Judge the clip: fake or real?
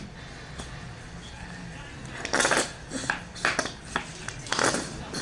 real